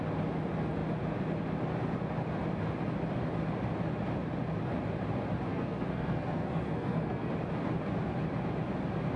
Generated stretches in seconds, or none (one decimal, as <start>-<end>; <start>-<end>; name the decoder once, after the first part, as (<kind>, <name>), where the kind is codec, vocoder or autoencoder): 5.5-7.3 (codec, SNAC)